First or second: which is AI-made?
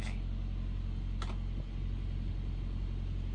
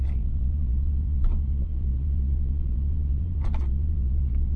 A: second